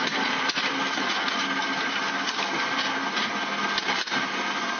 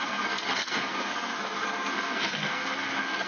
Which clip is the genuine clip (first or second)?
first